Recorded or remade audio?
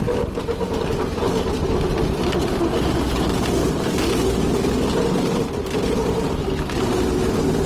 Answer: recorded